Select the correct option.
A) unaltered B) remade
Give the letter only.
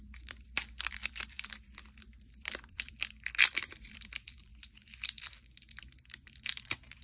B